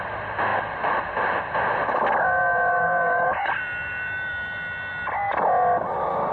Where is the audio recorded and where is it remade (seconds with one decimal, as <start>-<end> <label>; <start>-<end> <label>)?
0.0-2.7 recorded; 2.7-3.5 remade; 3.5-6.3 recorded